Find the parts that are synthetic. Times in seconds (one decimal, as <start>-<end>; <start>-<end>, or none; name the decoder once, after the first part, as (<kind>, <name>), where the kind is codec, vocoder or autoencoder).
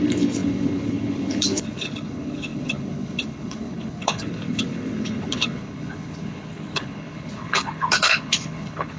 0.0-9.0 (codec, HILCodec)